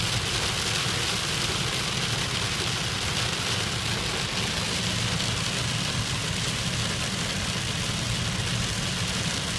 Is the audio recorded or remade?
recorded